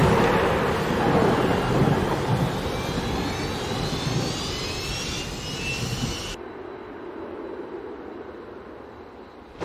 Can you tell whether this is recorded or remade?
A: recorded